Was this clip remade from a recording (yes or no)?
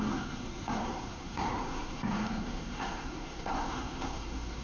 yes